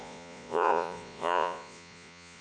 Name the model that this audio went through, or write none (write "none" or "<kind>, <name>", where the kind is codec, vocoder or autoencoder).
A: vocoder, Vocos